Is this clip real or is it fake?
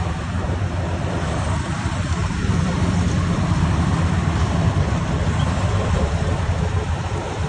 fake